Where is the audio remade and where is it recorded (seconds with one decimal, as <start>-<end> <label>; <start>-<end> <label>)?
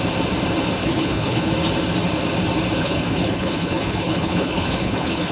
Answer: 0.0-0.8 recorded; 0.8-1.5 remade; 1.5-2.8 recorded; 2.8-5.3 remade